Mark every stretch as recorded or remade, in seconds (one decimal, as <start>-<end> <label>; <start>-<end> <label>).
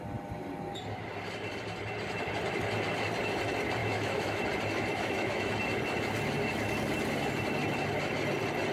0.0-3.8 recorded; 3.8-4.4 remade; 4.4-4.9 recorded; 4.9-5.5 remade; 5.5-8.7 recorded